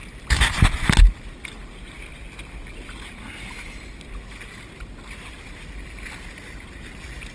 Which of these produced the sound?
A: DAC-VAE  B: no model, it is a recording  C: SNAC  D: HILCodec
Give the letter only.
B